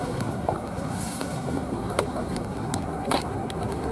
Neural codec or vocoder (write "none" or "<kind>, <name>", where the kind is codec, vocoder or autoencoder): codec, SNAC